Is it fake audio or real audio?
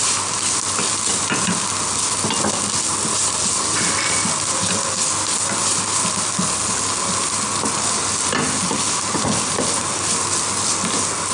real